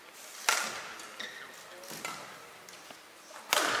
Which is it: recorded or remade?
recorded